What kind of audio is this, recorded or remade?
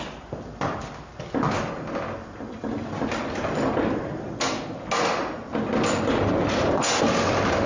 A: recorded